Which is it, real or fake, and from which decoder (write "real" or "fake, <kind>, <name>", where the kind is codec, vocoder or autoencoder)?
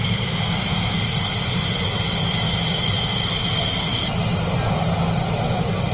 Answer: real